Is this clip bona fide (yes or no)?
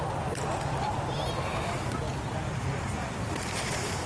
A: yes